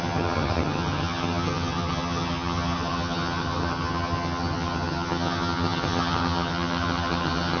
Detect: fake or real fake